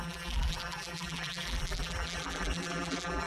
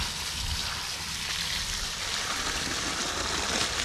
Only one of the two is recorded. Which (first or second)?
second